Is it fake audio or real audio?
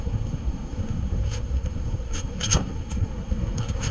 fake